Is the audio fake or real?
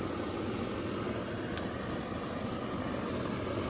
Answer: real